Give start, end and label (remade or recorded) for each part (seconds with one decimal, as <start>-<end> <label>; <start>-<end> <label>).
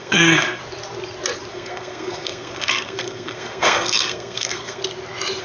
0.0-0.6 remade; 0.6-1.5 recorded; 1.5-4.8 remade; 4.8-5.4 recorded